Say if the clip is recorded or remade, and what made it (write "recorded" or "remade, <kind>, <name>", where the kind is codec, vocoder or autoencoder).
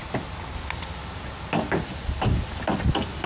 recorded